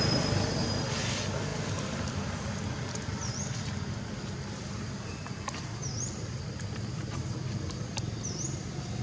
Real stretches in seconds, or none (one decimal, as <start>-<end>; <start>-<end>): 0.0-9.0